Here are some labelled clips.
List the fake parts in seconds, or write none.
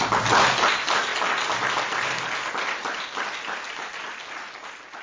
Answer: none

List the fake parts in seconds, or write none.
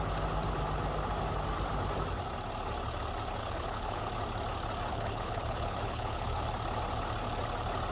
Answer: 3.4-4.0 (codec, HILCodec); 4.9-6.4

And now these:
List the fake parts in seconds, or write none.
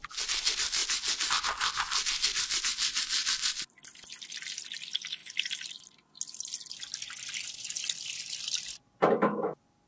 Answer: 5.2-5.7 (vocoder, BigVGAN v2)